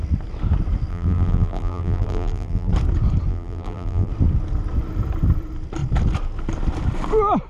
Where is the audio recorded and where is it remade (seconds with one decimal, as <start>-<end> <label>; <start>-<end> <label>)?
0.0-0.9 recorded; 0.9-2.7 remade; 2.7-3.3 recorded; 3.3-4.1 remade; 4.1-7.5 recorded